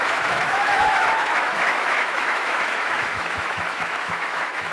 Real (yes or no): no